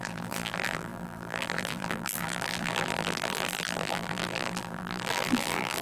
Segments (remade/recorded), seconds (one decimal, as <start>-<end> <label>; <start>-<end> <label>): 0.0-5.8 remade